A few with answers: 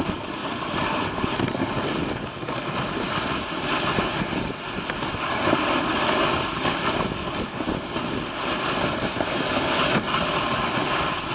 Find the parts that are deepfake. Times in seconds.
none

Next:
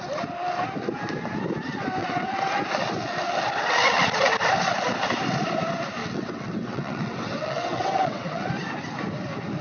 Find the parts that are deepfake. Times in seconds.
2.0-2.6; 6.0-8.5

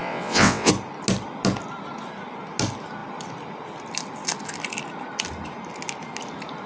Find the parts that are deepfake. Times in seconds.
0.0-0.7

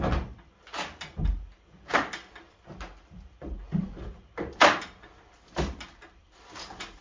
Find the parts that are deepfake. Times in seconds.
none

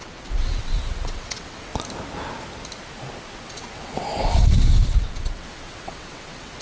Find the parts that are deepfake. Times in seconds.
0.0-1.7; 3.5-6.6

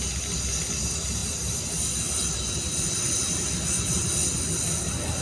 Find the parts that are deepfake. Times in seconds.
none

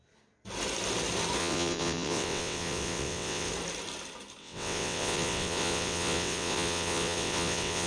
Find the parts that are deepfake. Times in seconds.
1.4-3.5; 4.4-7.9

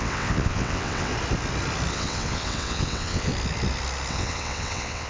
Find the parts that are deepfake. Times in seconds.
0.0-1.1; 1.9-3.3; 4.1-5.1